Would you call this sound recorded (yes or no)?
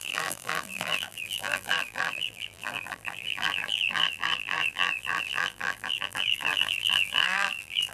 no